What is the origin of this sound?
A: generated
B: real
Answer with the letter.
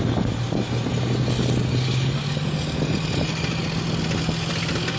B